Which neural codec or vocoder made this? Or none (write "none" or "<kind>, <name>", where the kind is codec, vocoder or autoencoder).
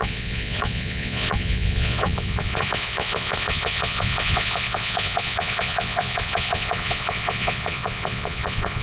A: vocoder, Vocos